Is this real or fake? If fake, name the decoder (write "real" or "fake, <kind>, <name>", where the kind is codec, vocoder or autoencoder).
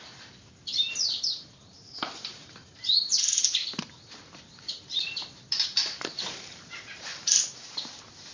fake, vocoder, BigVGAN v2